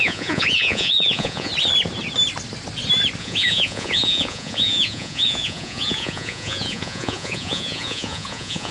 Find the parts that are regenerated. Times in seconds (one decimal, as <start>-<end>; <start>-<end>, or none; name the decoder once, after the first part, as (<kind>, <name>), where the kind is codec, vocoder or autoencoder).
0.0-1.5 (vocoder, Vocos); 3.2-8.7